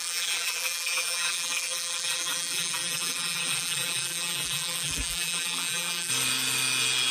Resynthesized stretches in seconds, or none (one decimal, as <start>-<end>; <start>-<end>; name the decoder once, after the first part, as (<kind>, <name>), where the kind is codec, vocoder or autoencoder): 0.0-6.1 (vocoder, BigVGAN v2)